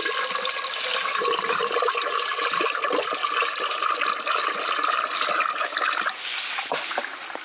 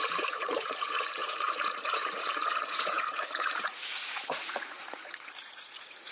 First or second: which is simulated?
second